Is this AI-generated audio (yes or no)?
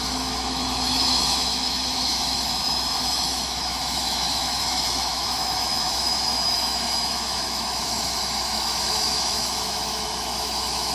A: yes